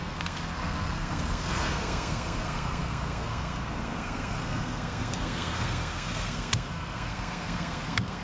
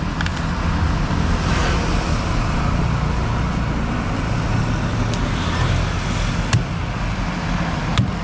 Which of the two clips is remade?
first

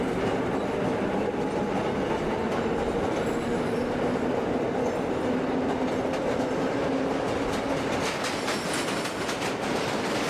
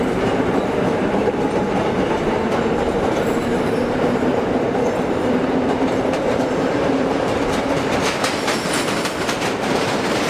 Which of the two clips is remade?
second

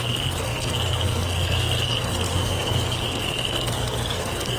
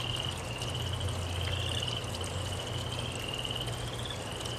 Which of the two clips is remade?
first